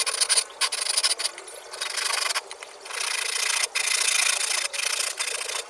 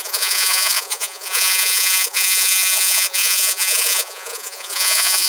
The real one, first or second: first